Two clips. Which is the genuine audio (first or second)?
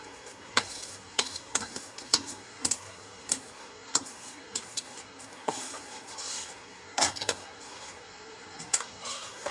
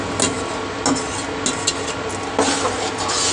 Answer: second